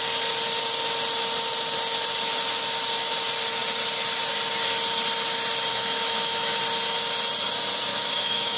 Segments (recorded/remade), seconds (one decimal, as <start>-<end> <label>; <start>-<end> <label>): 0.0-5.7 recorded; 5.7-6.6 remade; 6.6-7.9 recorded; 7.9-8.6 remade